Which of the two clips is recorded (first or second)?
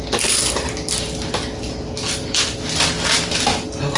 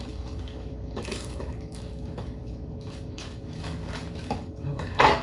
first